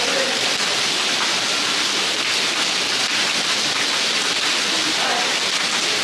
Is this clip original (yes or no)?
yes